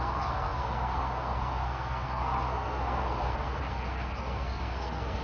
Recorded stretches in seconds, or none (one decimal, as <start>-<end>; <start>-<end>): none